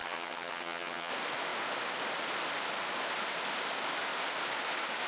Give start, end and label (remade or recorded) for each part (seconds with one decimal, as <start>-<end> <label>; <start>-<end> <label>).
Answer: 0.0-1.1 remade; 1.1-5.1 recorded

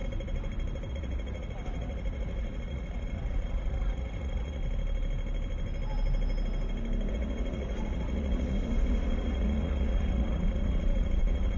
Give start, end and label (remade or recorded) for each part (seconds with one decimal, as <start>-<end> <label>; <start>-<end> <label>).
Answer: 0.0-0.9 recorded; 0.9-4.6 remade; 4.6-7.1 recorded; 7.1-11.6 remade

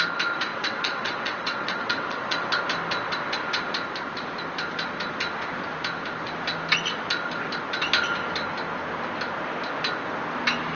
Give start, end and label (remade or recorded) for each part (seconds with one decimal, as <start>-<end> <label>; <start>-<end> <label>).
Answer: 0.0-0.5 recorded; 0.5-2.6 remade; 2.6-10.7 recorded

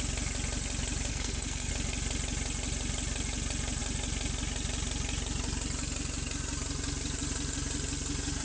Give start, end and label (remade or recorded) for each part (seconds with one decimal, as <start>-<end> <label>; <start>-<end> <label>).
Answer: 0.0-1.1 recorded; 1.1-1.7 remade; 1.7-8.4 recorded